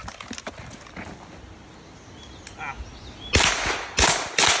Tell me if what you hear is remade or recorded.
recorded